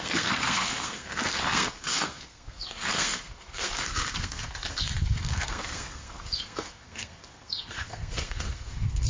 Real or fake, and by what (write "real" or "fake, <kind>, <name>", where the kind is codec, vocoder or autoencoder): fake, codec, SNAC